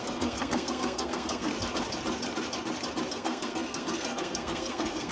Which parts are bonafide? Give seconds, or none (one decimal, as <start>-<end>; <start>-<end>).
1.5-3.1